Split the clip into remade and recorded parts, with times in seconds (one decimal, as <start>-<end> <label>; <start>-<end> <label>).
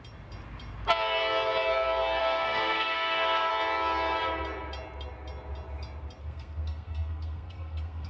0.0-2.2 recorded; 2.2-3.5 remade; 3.5-6.2 recorded; 6.2-8.1 remade